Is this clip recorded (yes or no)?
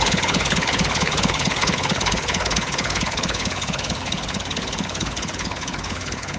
no